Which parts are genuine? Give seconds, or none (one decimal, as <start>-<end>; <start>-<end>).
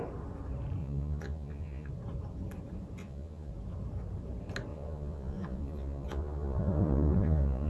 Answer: 0.0-0.8; 1.9-3.0; 3.5-4.7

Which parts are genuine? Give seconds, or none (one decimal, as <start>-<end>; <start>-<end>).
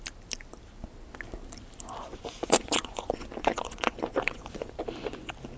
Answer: 0.0-2.1; 4.7-5.6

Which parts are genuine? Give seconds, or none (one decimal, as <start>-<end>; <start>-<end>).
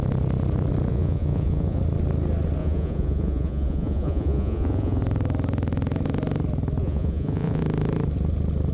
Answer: 0.0-0.9; 1.8-2.6; 5.0-6.8; 7.6-8.7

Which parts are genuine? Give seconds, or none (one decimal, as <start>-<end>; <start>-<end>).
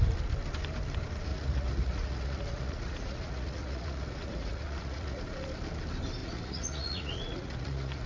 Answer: 0.0-1.3; 5.2-6.2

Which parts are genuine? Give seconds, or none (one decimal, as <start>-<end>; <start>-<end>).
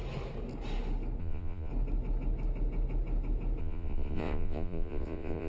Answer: 0.0-1.2; 1.7-3.6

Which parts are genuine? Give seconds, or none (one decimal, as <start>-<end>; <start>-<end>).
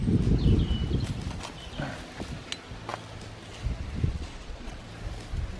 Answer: 0.0-4.1; 4.9-5.6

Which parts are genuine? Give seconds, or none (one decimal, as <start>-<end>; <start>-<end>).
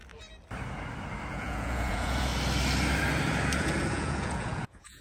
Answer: 0.0-1.3; 2.3-3.6